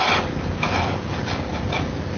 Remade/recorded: recorded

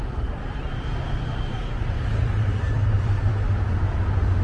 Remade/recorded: remade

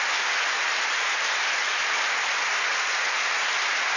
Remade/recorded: recorded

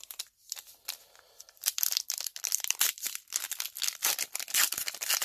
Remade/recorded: remade